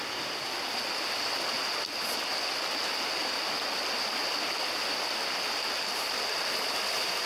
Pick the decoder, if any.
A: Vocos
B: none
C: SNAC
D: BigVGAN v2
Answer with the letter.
B